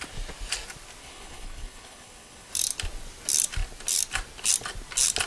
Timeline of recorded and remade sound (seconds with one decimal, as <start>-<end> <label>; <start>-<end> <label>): 0.0-1.0 recorded; 1.0-2.5 remade; 2.5-5.3 recorded